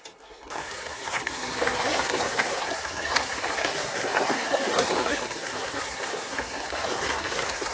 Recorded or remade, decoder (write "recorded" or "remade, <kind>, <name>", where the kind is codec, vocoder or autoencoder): remade, codec, SNAC